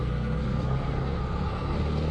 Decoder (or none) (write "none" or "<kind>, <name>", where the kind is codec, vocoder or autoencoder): codec, SNAC